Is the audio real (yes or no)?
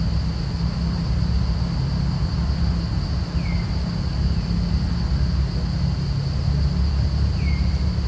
yes